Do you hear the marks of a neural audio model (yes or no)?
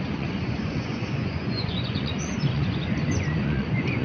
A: yes